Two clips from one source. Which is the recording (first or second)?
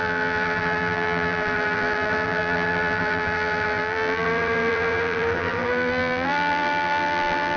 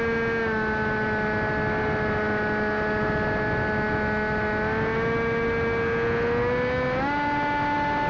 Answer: second